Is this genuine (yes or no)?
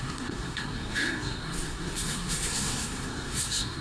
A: no